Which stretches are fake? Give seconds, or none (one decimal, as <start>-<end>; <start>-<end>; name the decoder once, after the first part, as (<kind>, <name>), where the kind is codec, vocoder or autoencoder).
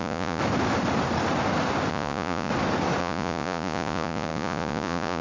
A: 0.0-0.4 (vocoder, Vocos); 1.9-2.5; 3.0-5.2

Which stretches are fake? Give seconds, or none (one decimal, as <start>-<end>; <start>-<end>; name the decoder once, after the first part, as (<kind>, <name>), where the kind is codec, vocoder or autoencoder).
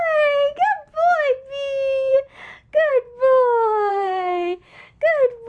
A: 3.9-5.0 (codec, SNAC)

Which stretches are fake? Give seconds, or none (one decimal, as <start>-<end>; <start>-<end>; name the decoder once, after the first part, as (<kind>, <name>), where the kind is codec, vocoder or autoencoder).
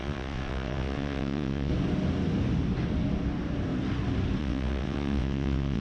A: 0.0-1.7 (vocoder, WaveNeXt); 4.4-5.8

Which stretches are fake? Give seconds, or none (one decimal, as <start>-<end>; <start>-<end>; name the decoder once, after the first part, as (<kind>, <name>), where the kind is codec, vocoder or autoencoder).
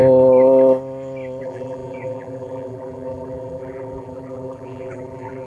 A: 1.4-5.5 (vocoder, BigVGAN v2)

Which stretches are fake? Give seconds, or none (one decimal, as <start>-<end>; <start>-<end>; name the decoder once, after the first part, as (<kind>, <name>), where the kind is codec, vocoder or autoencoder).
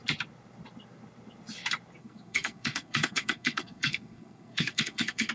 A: 2.0-5.3 (codec, SNAC)